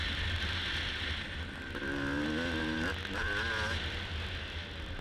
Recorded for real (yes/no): yes